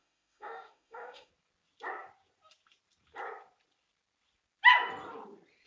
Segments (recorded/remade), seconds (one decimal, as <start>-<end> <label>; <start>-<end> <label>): 0.0-1.3 remade; 1.3-5.7 recorded